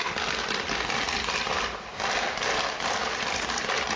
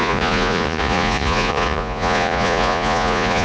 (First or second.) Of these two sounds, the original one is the first